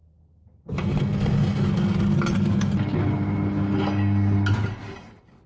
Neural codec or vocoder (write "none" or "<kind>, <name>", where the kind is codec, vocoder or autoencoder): none